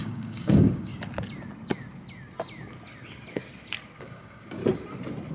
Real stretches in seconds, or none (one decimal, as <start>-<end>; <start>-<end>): 0.9-4.0; 4.6-5.3